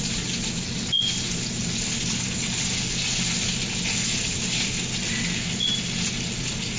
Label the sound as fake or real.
real